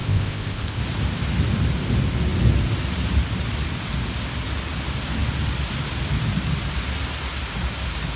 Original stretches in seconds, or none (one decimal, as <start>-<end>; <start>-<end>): 0.8-8.2